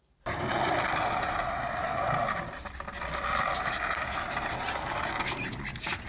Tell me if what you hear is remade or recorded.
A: recorded